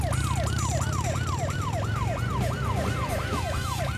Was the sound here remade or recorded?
recorded